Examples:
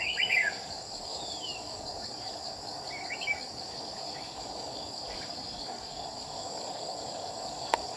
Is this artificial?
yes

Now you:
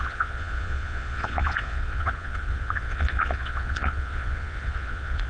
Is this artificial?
yes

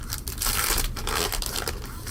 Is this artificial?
no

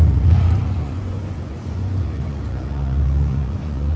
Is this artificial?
yes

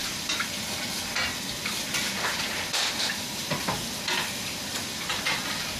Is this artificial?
no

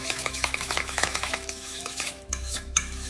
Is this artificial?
yes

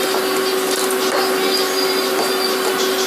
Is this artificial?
no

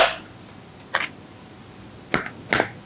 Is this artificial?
no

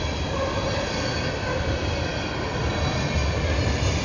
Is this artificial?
no